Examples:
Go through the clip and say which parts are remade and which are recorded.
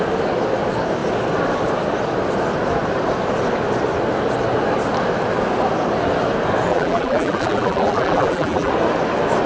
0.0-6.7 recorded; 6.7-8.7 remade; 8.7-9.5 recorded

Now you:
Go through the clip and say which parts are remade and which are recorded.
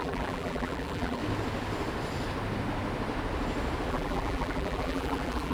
0.0-1.2 remade; 1.2-3.9 recorded; 3.9-5.5 remade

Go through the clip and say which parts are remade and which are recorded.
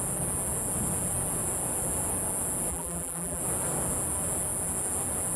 0.0-2.7 recorded; 2.7-3.4 remade; 3.4-5.4 recorded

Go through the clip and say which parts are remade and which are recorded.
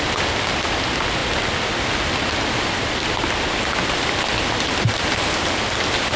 0.0-6.2 remade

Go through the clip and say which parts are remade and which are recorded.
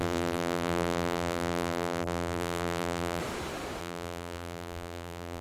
0.0-3.2 remade; 3.2-3.8 recorded; 3.8-5.4 remade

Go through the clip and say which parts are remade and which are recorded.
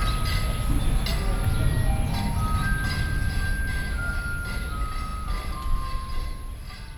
0.0-7.0 recorded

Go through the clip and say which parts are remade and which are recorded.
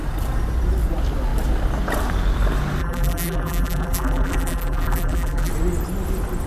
0.0-2.8 recorded; 2.8-5.5 remade; 5.5-6.5 recorded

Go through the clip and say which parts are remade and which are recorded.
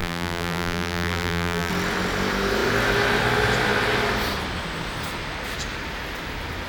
0.0-1.7 remade; 1.7-6.7 recorded